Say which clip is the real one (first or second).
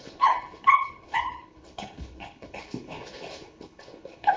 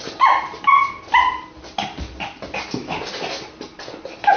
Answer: second